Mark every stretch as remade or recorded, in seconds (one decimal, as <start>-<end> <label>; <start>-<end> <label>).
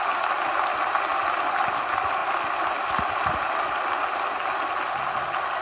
0.0-5.6 recorded